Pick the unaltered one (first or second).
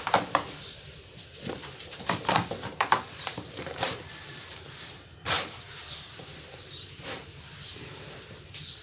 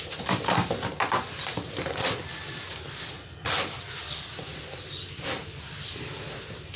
second